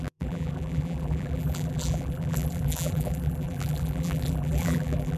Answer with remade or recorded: remade